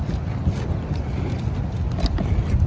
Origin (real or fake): real